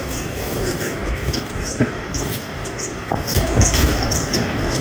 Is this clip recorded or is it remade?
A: remade